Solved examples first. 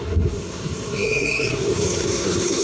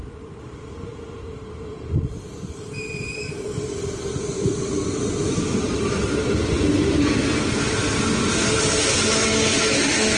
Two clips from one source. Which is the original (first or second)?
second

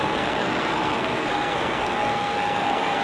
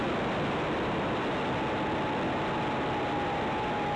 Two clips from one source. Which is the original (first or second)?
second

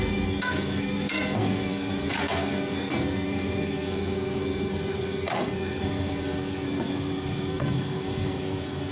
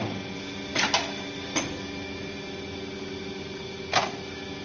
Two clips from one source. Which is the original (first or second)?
second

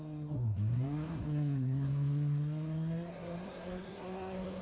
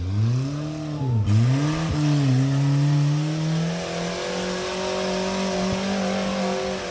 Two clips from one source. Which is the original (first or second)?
second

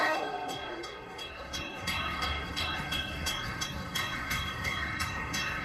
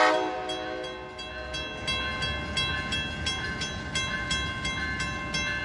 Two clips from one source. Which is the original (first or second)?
second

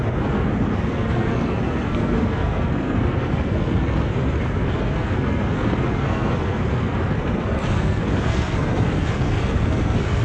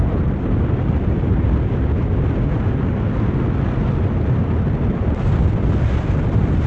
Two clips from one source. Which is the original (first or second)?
second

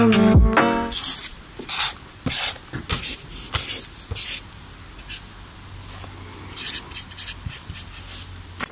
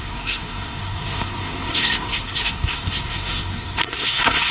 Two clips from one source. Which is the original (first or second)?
first